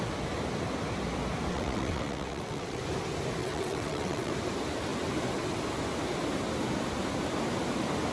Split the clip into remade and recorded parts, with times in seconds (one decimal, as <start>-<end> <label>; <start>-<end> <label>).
0.0-1.5 recorded; 1.5-2.8 remade; 2.8-3.4 recorded; 3.4-4.3 remade; 4.3-8.1 recorded

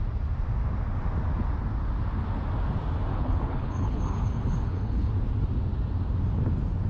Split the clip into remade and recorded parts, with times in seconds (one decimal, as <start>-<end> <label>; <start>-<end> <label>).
0.0-3.1 recorded; 3.1-5.1 remade; 5.1-6.9 recorded

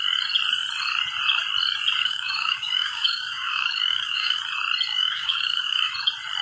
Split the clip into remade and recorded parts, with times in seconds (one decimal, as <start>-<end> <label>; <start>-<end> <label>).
0.0-2.0 recorded; 2.0-4.4 remade; 4.4-4.9 recorded; 4.9-5.9 remade; 5.9-6.4 recorded